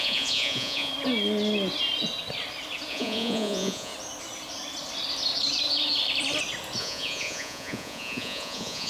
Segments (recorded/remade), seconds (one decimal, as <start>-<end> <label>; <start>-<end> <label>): 0.0-0.9 remade; 0.9-2.9 recorded; 2.9-3.9 remade; 3.9-6.8 recorded; 6.8-8.9 remade